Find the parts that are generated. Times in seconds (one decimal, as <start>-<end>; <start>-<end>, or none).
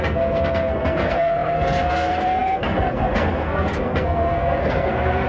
0.0-5.3